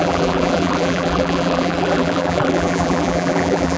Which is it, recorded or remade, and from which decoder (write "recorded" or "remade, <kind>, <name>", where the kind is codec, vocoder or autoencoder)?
remade, vocoder, BigVGAN v2